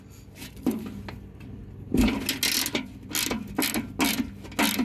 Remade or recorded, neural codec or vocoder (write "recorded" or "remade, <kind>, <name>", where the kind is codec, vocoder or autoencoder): recorded